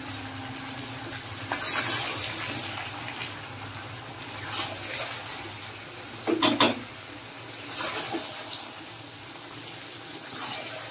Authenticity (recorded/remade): recorded